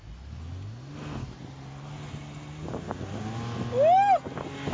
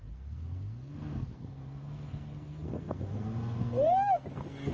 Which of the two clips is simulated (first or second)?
second